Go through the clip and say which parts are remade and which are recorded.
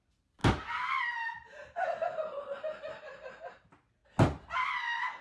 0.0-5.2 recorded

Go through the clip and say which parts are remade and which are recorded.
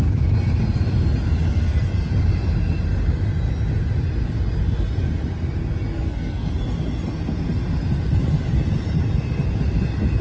0.0-1.5 recorded; 1.5-2.1 remade; 2.1-5.9 recorded; 5.9-6.5 remade; 6.5-10.2 recorded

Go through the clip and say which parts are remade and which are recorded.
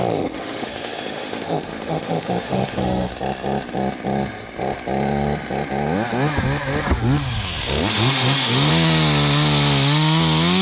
0.0-3.1 remade; 3.1-7.9 recorded; 7.9-8.7 remade; 8.7-10.6 recorded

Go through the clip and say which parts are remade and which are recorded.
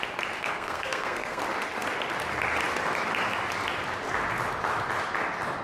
0.0-0.4 recorded; 0.4-1.4 remade; 1.4-5.6 recorded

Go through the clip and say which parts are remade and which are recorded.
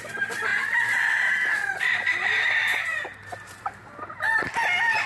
0.0-2.7 recorded; 2.7-3.6 remade; 3.6-5.1 recorded